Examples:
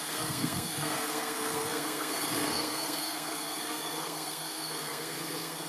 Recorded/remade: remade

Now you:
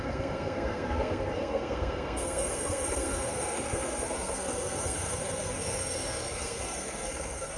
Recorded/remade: remade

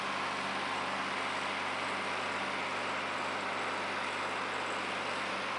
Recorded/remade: recorded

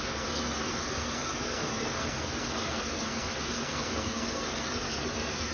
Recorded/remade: remade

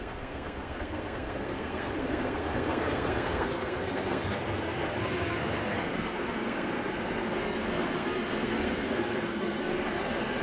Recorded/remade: remade